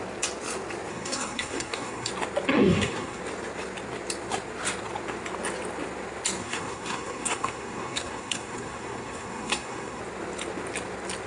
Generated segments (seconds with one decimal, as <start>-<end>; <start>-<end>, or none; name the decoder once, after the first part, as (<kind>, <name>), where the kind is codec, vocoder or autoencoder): 0.9-2.1 (codec, SNAC); 2.5-3.2; 6.4-10.0